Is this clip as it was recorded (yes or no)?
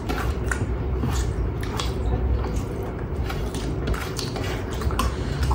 no